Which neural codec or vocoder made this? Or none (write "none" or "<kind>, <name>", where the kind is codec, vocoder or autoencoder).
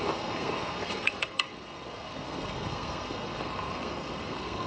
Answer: codec, SNAC